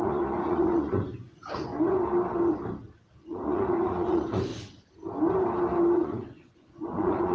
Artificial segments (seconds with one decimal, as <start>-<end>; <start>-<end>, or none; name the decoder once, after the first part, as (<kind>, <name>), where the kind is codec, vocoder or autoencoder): 0.0-1.7 (vocoder, Vocos); 3.2-4.5; 5.9-7.3